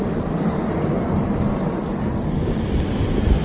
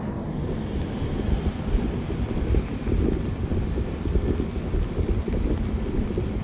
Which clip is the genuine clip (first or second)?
second